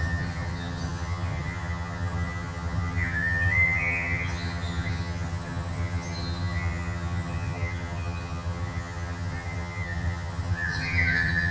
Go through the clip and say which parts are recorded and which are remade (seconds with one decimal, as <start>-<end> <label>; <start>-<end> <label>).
0.0-11.5 remade